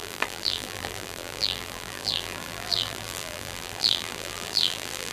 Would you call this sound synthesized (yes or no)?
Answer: yes